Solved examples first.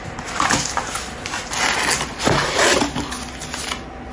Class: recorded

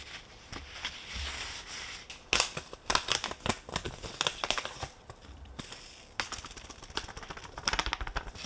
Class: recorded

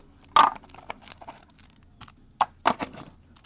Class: recorded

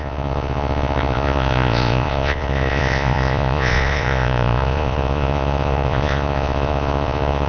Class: remade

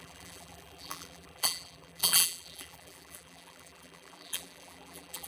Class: remade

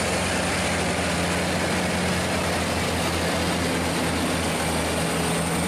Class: recorded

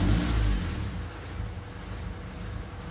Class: recorded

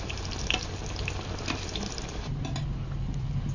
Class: recorded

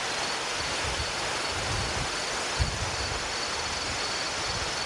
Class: recorded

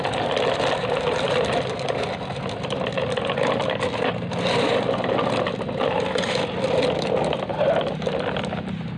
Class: recorded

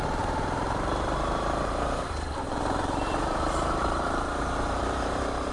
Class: remade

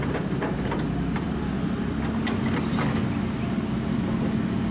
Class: recorded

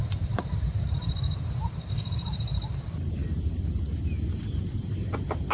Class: recorded